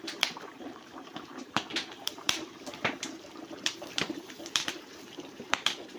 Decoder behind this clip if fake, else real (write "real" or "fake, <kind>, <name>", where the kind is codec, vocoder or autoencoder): fake, vocoder, BigVGAN v2